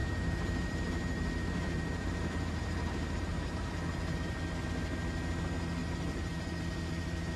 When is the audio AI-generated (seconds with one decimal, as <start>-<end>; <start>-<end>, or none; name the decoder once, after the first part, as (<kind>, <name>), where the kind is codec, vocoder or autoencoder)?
0.0-3.7 (vocoder, BigVGAN v2); 5.8-6.9